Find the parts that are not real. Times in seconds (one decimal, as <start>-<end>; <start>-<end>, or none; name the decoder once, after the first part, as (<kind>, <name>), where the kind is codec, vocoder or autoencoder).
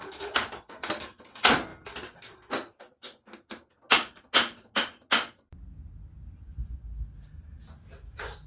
none